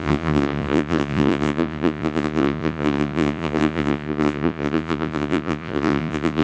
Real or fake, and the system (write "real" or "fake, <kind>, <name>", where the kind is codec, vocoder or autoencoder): fake, vocoder, Vocos